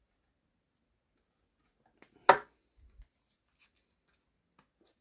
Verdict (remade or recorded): recorded